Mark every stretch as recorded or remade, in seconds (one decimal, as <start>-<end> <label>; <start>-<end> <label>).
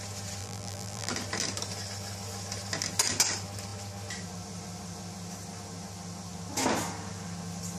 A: 0.0-0.4 recorded; 0.4-1.1 remade; 1.1-7.8 recorded